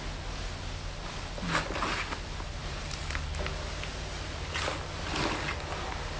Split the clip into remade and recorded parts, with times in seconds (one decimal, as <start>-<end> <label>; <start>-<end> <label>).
0.0-2.6 recorded; 2.6-3.1 remade; 3.1-6.2 recorded